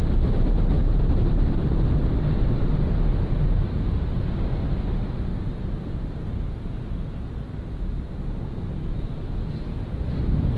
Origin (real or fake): real